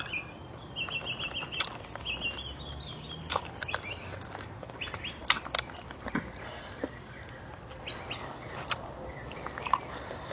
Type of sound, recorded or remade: recorded